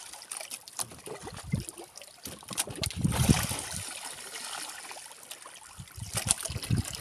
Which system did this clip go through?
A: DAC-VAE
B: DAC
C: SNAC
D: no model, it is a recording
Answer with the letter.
D